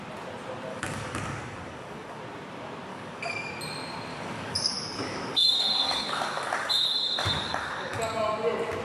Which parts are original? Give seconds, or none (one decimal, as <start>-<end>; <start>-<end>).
0.0-0.7; 2.2-2.9; 3.5-4.1; 8.0-8.8